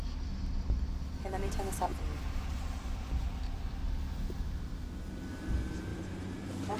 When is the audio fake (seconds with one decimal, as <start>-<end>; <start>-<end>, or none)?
1.9-3.4; 5.9-6.8